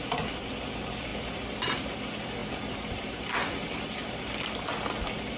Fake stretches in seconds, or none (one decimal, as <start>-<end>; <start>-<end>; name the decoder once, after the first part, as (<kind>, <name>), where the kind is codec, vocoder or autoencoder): 2.4-4.2 (vocoder, BigVGAN v2)